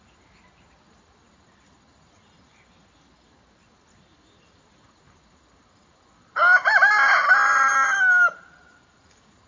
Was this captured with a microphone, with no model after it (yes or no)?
yes